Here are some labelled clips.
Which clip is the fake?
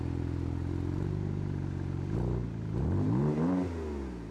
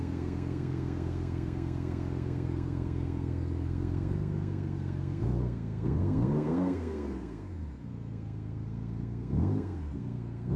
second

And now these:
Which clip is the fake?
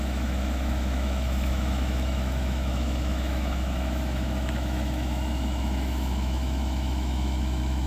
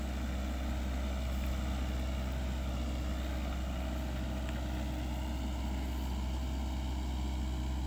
first